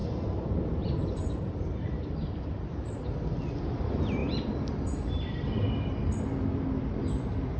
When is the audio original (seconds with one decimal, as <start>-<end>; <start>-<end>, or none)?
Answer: 2.5-4.2; 5.8-7.6